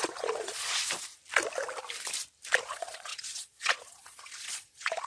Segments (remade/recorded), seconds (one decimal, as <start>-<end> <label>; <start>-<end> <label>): 0.0-0.8 remade; 0.8-2.6 recorded; 2.6-5.1 remade